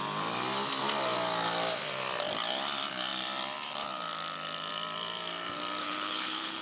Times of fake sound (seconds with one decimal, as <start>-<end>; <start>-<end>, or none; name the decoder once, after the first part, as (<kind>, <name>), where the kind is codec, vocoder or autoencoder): 5.8-6.6 (codec, HILCodec)